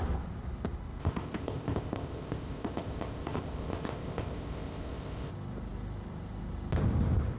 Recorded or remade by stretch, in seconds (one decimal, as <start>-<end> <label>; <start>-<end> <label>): 0.0-1.0 recorded; 1.0-5.3 remade; 5.3-7.4 recorded